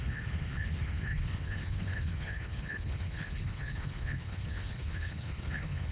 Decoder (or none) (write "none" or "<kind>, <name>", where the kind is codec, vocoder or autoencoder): codec, HILCodec